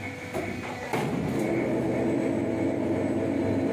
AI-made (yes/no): no